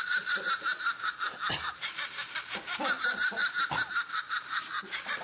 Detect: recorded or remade remade